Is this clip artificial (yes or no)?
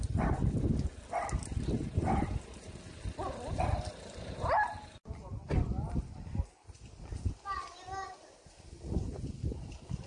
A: no